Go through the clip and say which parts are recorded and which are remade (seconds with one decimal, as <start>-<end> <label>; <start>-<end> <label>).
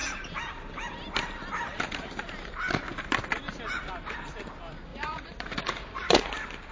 0.0-4.9 recorded; 4.9-6.3 remade; 6.3-6.7 recorded